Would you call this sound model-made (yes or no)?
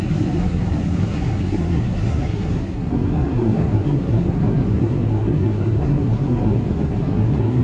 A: yes